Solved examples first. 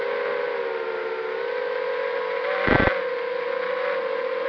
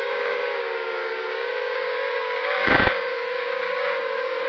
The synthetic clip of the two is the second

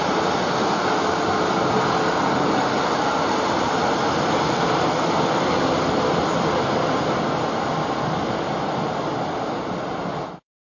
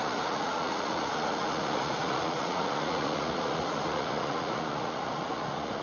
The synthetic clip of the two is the second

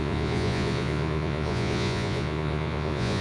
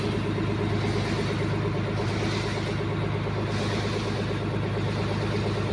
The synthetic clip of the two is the first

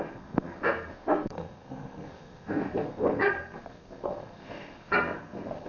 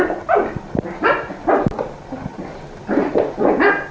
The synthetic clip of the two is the first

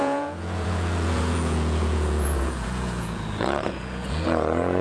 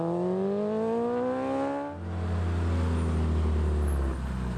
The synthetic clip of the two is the first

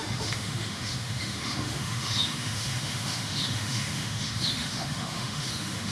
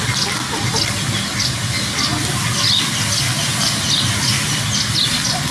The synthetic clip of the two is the first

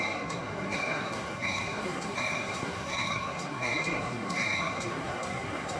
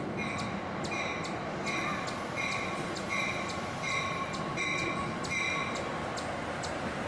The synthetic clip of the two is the first